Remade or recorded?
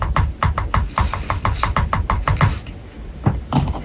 recorded